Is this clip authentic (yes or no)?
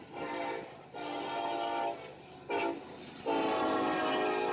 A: yes